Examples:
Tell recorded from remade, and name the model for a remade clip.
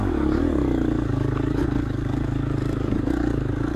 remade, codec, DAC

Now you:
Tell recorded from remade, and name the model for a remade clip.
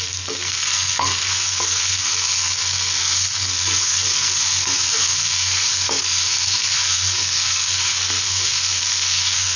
remade, codec, SNAC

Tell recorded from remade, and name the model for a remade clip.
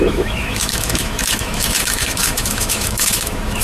remade, autoencoder, DAC-VAE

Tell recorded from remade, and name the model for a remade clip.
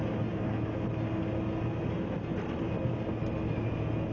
recorded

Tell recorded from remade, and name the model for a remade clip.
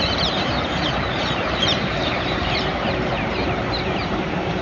remade, vocoder, BigVGAN v2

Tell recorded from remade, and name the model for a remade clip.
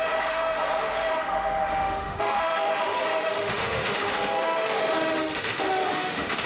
remade, autoencoder, DAC-VAE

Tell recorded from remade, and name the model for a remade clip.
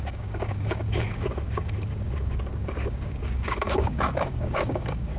remade, codec, DAC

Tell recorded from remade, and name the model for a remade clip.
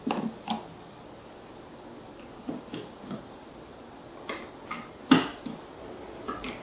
recorded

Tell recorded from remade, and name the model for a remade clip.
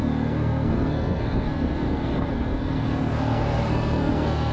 remade, codec, SNAC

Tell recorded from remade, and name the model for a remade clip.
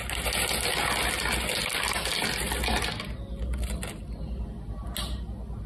recorded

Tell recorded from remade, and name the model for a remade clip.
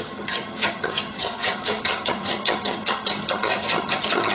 remade, vocoder, HiFi-GAN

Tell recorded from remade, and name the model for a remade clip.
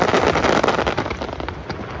recorded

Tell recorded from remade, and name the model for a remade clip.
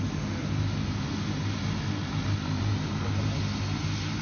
recorded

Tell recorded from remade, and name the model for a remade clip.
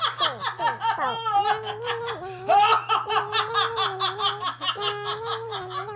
recorded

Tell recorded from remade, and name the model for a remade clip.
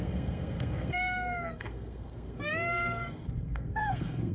remade, codec, SNAC